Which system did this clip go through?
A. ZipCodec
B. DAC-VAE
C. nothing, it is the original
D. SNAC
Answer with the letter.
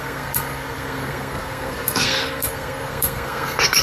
D